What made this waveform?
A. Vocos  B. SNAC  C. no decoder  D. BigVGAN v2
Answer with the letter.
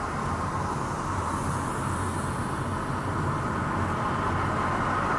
C